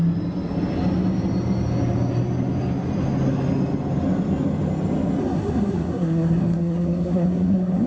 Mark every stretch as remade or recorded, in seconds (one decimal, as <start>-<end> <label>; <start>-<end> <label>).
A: 0.0-5.2 recorded; 5.2-7.9 remade